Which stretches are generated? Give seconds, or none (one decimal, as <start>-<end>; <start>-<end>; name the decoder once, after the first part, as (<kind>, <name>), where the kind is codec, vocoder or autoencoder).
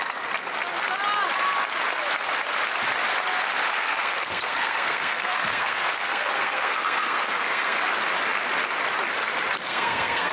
3.8-7.8 (codec, SNAC); 9.6-10.3